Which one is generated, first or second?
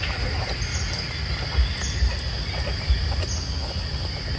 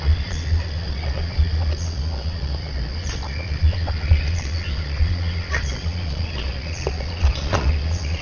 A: second